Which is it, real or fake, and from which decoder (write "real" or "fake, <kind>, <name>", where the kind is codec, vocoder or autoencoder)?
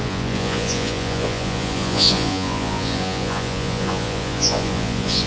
fake, vocoder, Vocos